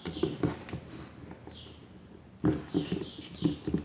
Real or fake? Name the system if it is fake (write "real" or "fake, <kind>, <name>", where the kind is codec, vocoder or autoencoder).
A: real